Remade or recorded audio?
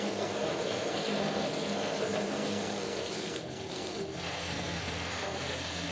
remade